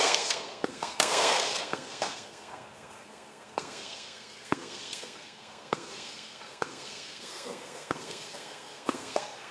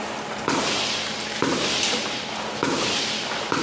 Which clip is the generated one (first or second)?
first